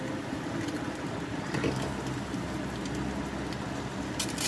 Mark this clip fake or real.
real